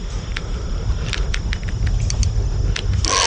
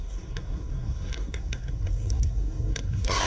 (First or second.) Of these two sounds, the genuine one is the first